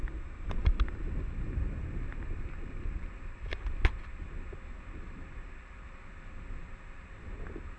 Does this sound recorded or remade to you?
recorded